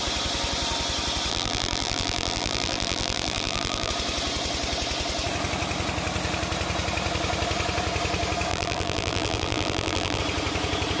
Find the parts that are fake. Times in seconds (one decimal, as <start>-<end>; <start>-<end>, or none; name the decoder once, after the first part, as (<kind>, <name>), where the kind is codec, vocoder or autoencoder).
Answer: 1.3-3.9 (vocoder, BigVGAN v2); 8.5-10.2